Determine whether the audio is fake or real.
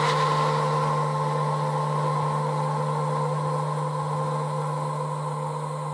real